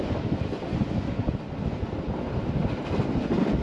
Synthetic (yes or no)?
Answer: no